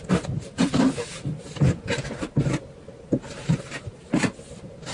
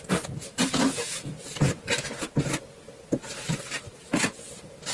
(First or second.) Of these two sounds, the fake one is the first